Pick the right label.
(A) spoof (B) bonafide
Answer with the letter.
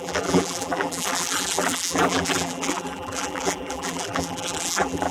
A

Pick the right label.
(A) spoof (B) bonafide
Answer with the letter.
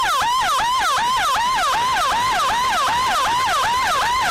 B